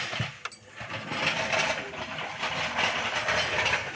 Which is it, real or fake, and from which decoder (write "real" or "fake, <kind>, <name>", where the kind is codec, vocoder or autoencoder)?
real